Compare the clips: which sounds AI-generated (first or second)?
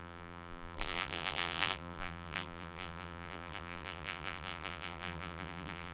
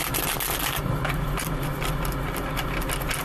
first